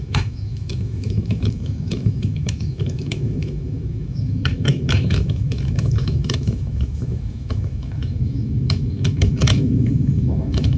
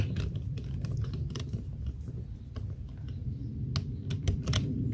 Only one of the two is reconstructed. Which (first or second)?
first